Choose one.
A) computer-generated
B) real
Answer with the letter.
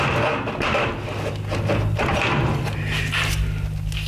B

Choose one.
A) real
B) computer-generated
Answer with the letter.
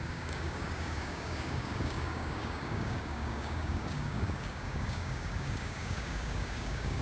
B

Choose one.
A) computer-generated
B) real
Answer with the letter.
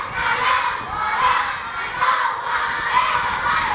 B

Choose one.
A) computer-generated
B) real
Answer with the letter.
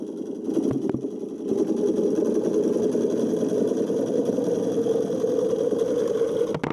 B